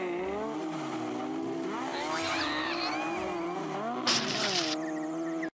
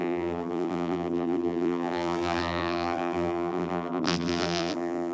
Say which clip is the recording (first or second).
first